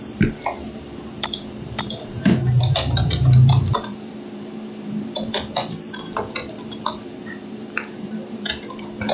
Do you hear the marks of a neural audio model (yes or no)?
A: yes